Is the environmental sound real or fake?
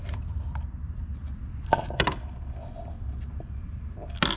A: real